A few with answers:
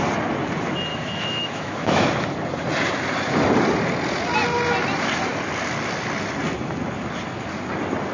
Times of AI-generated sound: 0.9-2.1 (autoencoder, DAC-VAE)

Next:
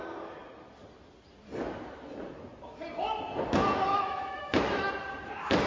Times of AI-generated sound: 3.9-4.9 (autoencoder, DAC-VAE)